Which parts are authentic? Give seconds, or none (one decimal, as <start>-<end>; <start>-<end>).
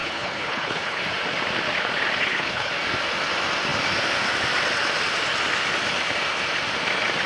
1.0-2.2; 2.7-7.3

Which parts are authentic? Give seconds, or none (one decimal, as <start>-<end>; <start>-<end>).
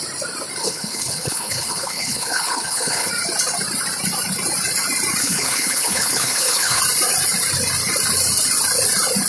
0.0-0.6; 3.1-5.2; 6.8-9.3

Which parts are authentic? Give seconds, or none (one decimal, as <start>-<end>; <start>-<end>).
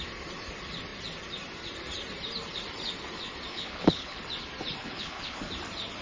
0.0-3.5; 4.2-4.8; 5.5-6.0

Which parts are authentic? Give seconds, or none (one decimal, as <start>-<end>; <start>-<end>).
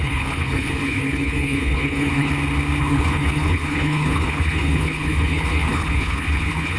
2.3-2.8